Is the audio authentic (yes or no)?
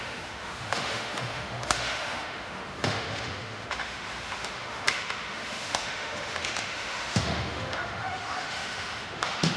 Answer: no